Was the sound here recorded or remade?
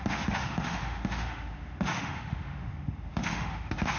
remade